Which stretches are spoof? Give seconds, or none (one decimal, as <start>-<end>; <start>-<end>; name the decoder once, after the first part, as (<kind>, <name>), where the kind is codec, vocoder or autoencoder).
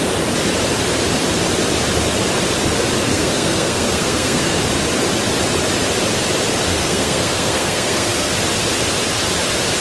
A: 3.1-4.6 (codec, SNAC); 6.7-8.3